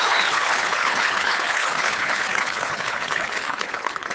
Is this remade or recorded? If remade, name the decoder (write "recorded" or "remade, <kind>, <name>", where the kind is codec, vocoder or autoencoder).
remade, codec, HILCodec